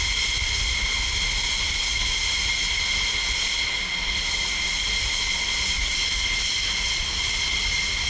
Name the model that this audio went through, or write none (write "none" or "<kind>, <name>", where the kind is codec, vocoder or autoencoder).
none